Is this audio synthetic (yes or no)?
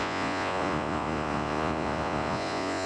yes